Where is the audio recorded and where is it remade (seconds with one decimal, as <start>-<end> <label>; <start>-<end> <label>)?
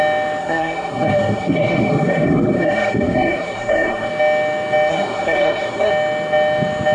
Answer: 0.0-0.4 recorded; 0.4-4.1 remade; 4.1-4.9 recorded; 4.9-5.9 remade; 5.9-6.9 recorded